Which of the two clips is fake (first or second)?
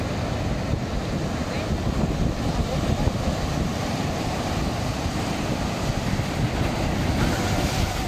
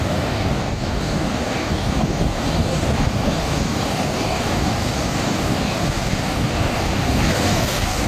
second